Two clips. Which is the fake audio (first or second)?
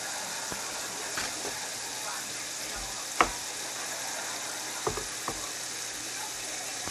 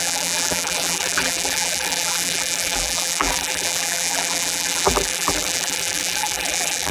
second